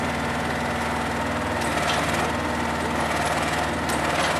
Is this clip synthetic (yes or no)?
no